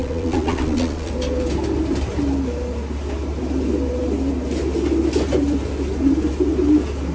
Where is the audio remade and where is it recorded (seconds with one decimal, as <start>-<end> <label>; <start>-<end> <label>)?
0.0-1.1 remade; 1.1-7.1 recorded